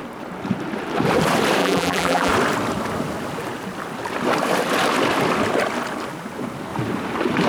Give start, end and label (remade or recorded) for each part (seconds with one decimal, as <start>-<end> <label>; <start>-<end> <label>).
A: 0.0-1.6 recorded; 1.6-2.3 remade; 2.3-7.5 recorded